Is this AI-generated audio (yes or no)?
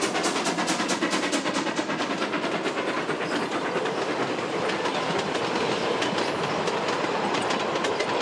no